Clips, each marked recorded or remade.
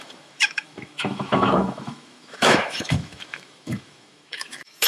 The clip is remade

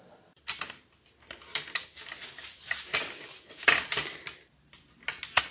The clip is recorded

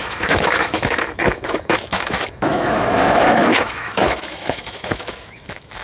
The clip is remade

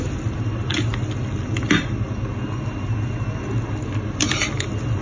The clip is recorded